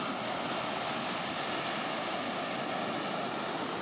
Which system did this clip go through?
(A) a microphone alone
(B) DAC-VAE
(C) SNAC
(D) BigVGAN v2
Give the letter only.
A